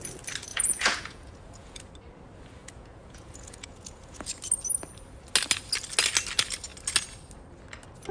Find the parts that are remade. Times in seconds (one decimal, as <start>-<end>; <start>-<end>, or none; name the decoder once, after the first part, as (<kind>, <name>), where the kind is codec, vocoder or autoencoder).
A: 0.5-1.8 (vocoder, Vocos); 2.6-4.3